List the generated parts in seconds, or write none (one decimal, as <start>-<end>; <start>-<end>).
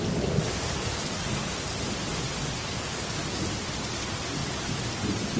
none